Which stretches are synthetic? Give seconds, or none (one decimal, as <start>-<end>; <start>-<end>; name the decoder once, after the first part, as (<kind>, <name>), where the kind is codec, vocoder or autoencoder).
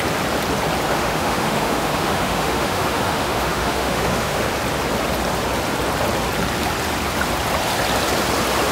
0.9-4.4 (autoencoder, DAC-VAE)